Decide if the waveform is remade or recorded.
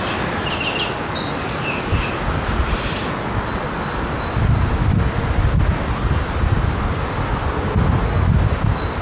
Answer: recorded